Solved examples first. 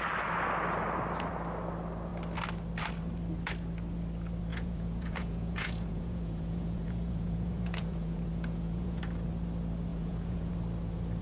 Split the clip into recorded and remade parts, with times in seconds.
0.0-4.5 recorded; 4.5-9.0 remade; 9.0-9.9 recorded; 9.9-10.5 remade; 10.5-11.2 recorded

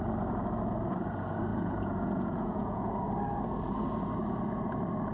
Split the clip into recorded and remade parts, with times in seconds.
0.0-1.5 recorded; 1.5-2.9 remade; 2.9-5.1 recorded